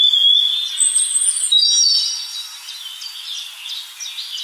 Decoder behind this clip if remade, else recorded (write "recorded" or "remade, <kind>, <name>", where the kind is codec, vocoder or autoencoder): recorded